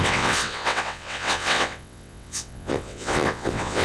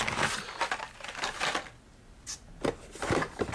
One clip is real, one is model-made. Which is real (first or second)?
second